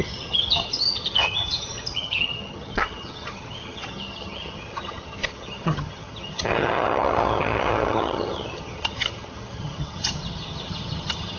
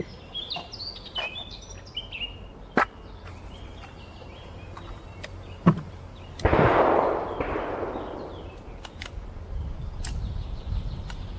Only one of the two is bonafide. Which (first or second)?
second